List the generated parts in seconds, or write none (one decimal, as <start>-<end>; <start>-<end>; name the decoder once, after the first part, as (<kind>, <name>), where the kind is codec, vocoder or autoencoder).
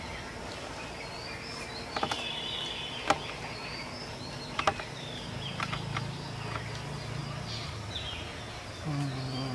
none